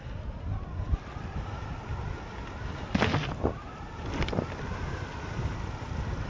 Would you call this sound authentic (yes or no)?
yes